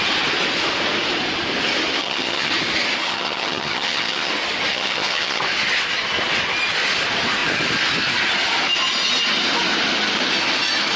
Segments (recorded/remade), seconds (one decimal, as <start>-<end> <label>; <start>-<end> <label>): 0.0-2.0 recorded; 2.0-2.5 remade; 2.5-3.0 recorded; 3.0-4.3 remade; 4.3-4.7 recorded; 4.7-5.4 remade; 5.4-11.0 recorded